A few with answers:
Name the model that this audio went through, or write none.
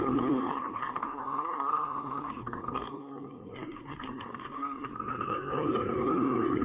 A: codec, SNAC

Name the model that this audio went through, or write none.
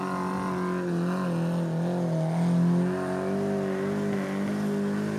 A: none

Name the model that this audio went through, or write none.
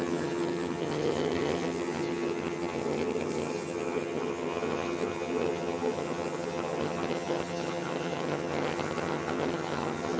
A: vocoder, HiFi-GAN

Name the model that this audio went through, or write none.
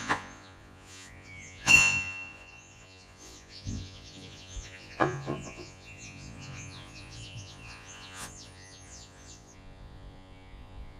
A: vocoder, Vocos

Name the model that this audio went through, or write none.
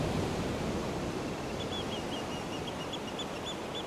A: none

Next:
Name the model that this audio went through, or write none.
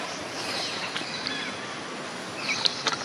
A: vocoder, BigVGAN v2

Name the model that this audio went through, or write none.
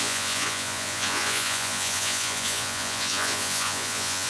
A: vocoder, Vocos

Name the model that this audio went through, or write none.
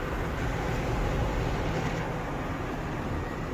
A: none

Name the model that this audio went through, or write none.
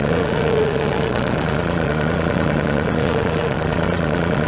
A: vocoder, Vocos